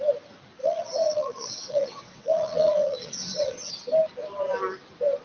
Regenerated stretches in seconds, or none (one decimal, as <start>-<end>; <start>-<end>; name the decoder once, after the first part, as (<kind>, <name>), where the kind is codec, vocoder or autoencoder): 0.6-3.7 (vocoder, WaveNeXt)